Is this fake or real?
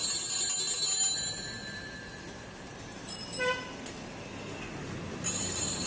real